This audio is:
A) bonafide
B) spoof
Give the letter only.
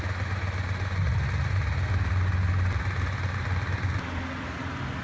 A